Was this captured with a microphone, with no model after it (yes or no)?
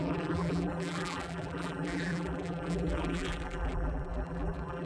no